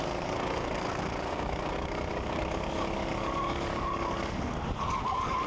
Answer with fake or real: fake